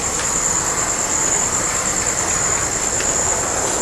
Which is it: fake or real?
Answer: real